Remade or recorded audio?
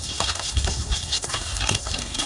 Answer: remade